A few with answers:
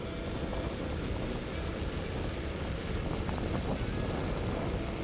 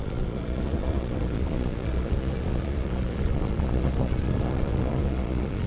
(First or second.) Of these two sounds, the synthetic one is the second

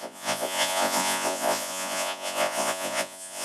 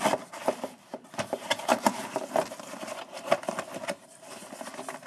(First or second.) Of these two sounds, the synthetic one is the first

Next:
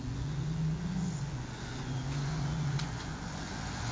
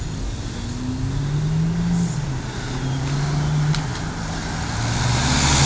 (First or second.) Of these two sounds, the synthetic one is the first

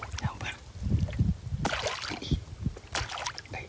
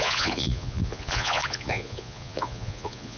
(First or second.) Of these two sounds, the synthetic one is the second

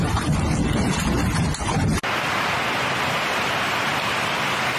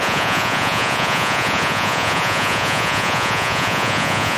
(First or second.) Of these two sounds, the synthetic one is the second